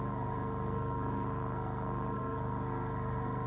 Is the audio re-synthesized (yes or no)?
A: yes